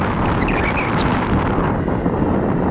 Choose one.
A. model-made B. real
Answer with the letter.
B